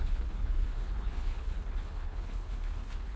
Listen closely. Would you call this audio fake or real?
fake